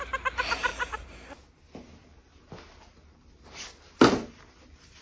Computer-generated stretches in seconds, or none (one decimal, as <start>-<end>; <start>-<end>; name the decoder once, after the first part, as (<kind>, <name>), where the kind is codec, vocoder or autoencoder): 0.7-1.3 (vocoder, BigVGAN v2); 2.3-4.4